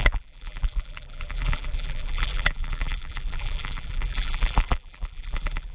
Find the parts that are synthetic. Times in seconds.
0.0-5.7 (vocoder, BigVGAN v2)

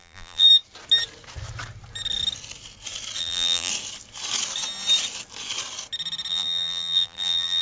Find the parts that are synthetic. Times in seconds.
0.0-0.5 (vocoder, BigVGAN v2); 3.2-3.7; 6.3-7.6